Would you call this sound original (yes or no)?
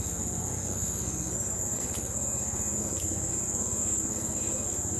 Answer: no